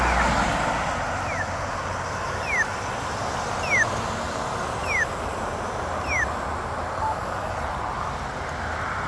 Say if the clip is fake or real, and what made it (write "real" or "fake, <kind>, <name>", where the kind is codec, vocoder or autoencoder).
real